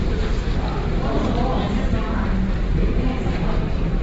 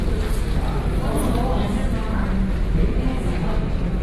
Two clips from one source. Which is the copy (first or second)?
first